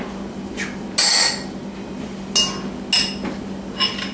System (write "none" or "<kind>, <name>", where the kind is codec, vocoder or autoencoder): none